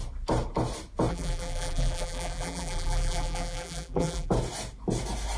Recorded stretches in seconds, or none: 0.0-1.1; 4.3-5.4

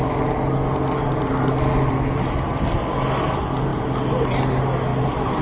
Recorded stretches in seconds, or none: 0.0-5.4

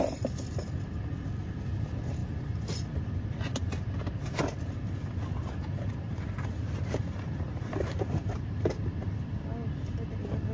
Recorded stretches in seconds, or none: 0.0-5.3; 9.1-10.5

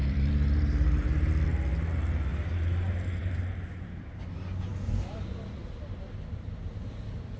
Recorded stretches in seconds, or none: 1.3-2.3; 3.4-7.4

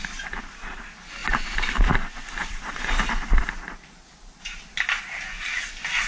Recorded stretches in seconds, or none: 0.0-2.4; 3.0-6.1

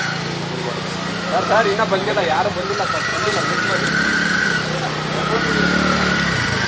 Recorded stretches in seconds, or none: 0.0-2.0; 2.7-3.1; 5.2-6.7